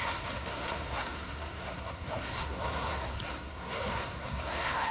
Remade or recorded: remade